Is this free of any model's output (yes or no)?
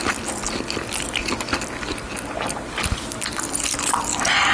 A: yes